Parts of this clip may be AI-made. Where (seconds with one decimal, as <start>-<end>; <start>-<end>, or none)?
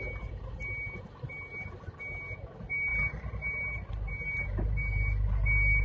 none